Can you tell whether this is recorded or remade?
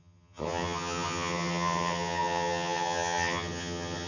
remade